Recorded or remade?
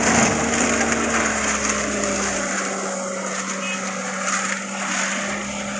recorded